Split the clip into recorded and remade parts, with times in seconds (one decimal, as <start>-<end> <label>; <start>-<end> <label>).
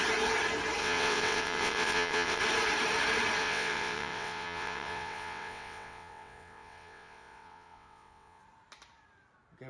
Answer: 0.0-0.8 recorded; 0.8-2.4 remade; 2.4-3.4 recorded; 3.4-8.4 remade; 8.4-9.7 recorded